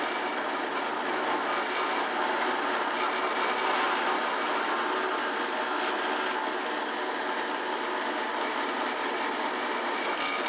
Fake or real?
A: real